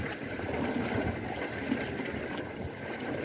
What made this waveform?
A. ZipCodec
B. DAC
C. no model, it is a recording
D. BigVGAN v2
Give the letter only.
C